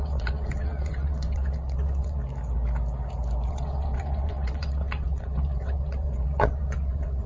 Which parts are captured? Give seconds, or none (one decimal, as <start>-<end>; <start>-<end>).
2.2-3.5